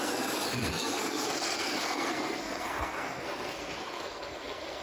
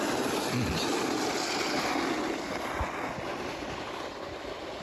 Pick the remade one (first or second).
first